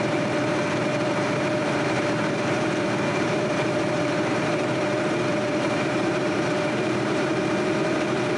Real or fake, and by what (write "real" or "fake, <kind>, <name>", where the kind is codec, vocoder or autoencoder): fake, vocoder, BigVGAN v2